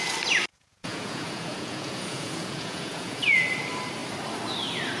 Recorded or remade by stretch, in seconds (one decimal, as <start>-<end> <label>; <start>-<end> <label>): 0.0-0.5 recorded; 0.5-3.4 remade; 3.4-5.0 recorded